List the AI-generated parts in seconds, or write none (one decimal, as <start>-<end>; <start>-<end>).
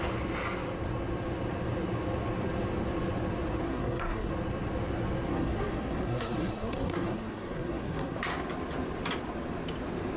3.6-4.3; 5.3-8.2